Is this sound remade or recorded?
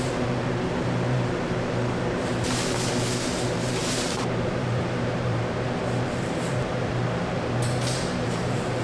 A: remade